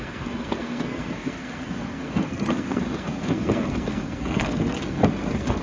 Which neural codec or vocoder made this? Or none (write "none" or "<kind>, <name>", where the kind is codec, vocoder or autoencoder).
codec, SNAC